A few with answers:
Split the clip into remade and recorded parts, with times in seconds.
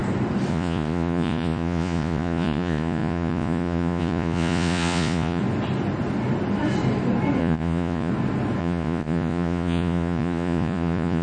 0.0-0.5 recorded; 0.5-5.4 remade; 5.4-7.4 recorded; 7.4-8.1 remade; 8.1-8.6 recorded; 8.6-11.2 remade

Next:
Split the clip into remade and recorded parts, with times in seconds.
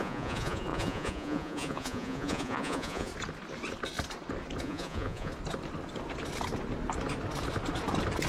0.0-3.1 remade; 3.1-4.6 recorded; 4.6-5.3 remade; 5.3-8.3 recorded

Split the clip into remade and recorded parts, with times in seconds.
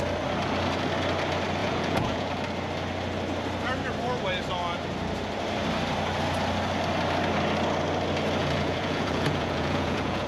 0.0-1.6 recorded; 1.6-2.3 remade; 2.3-8.4 recorded; 8.4-10.3 remade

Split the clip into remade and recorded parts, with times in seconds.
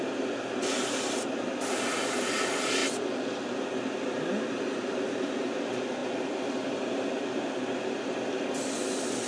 0.0-9.3 recorded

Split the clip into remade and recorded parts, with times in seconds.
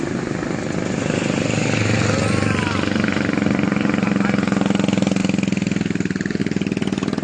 0.0-7.2 recorded